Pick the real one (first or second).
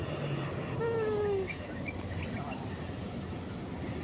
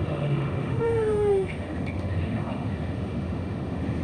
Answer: first